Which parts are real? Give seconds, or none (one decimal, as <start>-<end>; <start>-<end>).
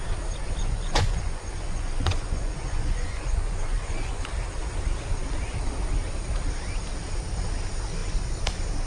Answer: 0.0-0.6; 4.2-8.9